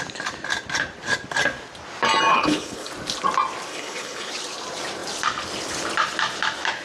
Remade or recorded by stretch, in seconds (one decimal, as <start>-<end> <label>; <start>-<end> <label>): 0.0-2.3 recorded; 2.3-2.9 remade; 2.9-3.7 recorded; 3.7-4.3 remade; 4.3-6.8 recorded